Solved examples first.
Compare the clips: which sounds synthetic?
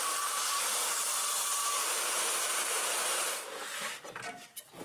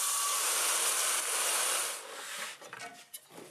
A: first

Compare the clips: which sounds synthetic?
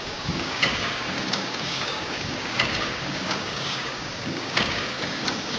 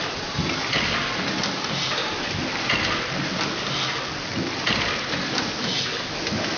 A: first